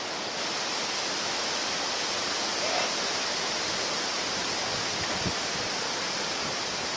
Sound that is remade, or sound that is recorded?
recorded